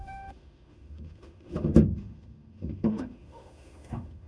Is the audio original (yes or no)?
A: no